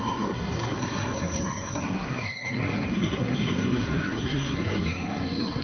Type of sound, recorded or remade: remade